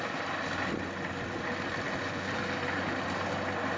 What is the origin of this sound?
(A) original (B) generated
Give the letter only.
A